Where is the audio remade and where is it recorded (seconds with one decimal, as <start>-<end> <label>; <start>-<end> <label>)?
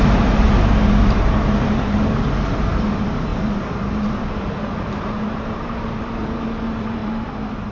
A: 0.0-7.7 remade